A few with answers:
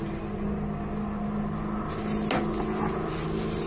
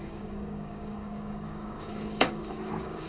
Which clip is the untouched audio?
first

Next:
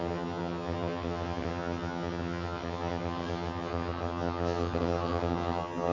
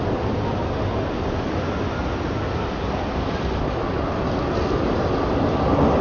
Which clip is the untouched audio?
second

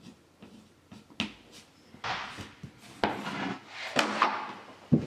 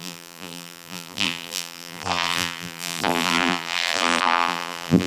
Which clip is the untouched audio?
first